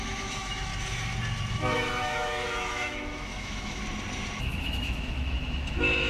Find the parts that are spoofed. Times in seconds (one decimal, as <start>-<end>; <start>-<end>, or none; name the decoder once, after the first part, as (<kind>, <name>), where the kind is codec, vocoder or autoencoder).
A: 0.0-0.7 (autoencoder, DAC-VAE); 1.5-3.8; 4.4-6.1